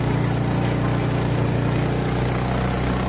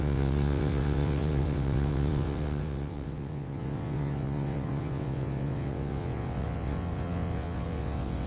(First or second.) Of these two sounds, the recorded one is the first